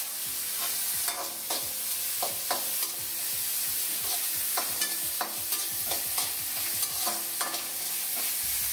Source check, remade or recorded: recorded